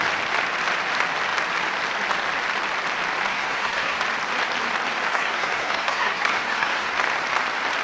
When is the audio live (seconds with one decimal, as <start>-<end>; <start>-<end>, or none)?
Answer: 0.0-3.3; 4.0-5.1; 6.9-7.8